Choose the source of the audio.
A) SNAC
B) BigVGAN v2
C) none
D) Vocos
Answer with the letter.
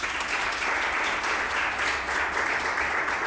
C